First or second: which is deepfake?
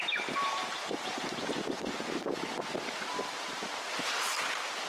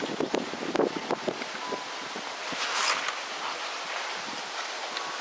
first